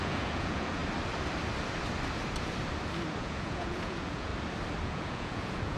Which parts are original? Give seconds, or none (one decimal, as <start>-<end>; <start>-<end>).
0.8-3.2; 4.3-4.8